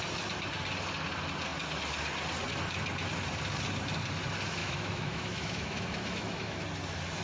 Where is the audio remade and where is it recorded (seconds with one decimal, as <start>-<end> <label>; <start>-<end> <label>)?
0.0-4.6 recorded; 4.6-6.6 remade; 6.6-7.2 recorded